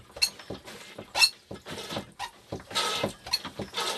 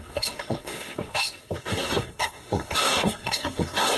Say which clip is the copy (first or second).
second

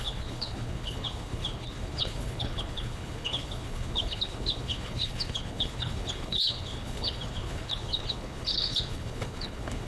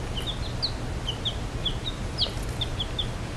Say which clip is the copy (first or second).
first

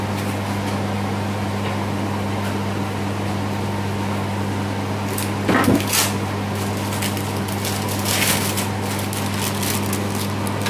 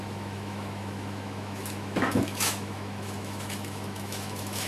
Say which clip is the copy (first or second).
second